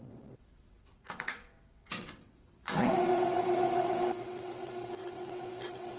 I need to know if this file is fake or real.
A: fake